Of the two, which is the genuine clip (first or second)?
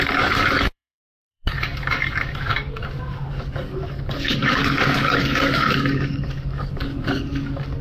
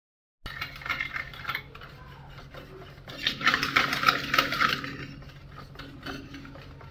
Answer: second